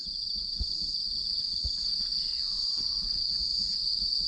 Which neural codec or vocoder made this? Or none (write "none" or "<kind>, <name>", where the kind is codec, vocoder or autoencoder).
none